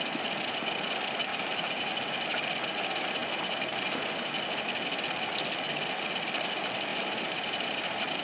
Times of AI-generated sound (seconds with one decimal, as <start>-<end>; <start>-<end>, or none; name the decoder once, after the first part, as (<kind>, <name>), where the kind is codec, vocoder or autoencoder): 1.3-1.9 (vocoder, BigVGAN v2); 6.9-8.2